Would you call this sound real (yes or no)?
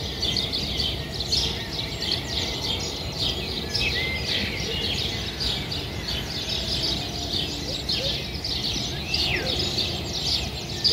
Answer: yes